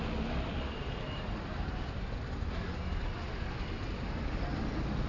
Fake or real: real